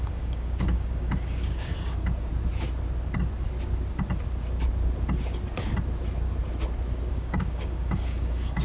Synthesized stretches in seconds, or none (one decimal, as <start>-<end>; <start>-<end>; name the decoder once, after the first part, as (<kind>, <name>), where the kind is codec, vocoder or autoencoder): 0.0-2.3 (codec, DAC); 7.1-8.6